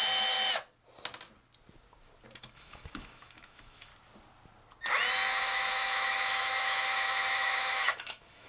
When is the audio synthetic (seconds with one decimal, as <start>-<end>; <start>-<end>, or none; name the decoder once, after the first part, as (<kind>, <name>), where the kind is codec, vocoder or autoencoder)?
2.4-3.9 (autoencoder, DAC-VAE); 5.3-8.5